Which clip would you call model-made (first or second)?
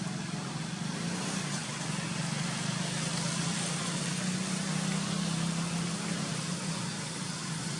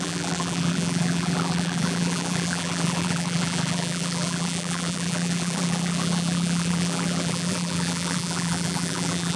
second